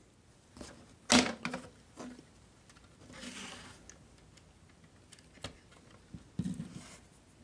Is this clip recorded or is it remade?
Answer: recorded